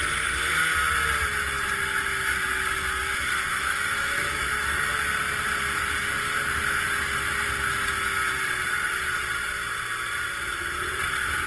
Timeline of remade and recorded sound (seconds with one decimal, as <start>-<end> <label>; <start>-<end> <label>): 0.0-3.5 recorded; 3.5-4.4 remade; 4.4-11.5 recorded